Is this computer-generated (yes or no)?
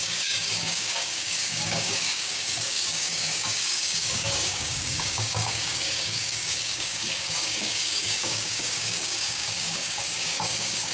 yes